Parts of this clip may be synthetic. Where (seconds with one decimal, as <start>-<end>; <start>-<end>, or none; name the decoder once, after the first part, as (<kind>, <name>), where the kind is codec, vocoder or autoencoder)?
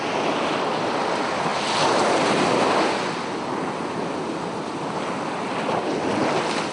none